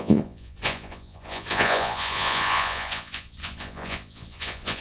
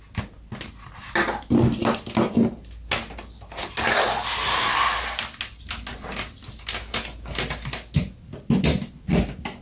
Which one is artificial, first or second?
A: first